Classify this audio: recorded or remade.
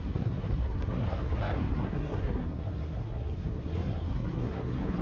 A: remade